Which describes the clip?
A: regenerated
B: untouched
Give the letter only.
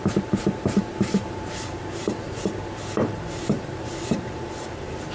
A